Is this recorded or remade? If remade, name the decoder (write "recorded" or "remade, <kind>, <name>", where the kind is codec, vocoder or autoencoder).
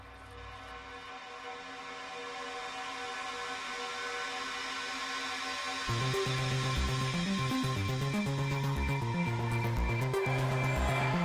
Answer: recorded